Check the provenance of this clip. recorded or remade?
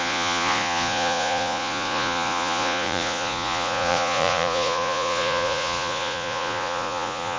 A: remade